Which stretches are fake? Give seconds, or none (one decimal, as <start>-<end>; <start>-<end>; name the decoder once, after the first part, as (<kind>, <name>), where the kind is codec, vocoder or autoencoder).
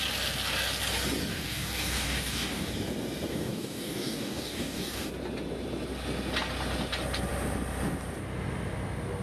1.3-2.7 (codec, DAC); 3.3-5.1